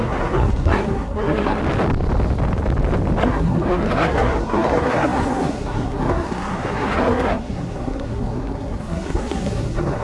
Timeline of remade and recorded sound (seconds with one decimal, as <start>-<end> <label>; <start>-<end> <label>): 0.0-1.6 remade; 1.6-3.2 recorded; 3.2-10.0 remade